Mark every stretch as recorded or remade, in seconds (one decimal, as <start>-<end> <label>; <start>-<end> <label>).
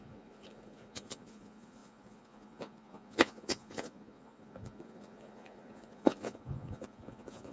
0.0-7.5 remade